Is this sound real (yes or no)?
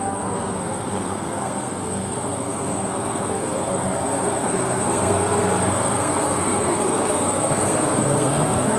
no